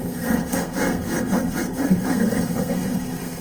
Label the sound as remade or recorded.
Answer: remade